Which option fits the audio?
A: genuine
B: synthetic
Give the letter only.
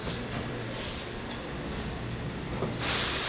A